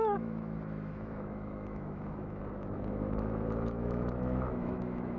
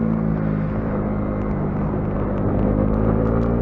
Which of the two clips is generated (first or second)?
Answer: first